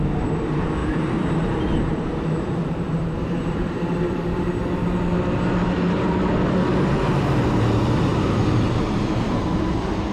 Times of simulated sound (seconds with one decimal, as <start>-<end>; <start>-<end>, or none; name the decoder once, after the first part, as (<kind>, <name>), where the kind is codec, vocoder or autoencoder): 0.8-4.5 (vocoder, BigVGAN v2); 8.1-8.8